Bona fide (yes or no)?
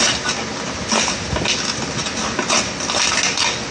yes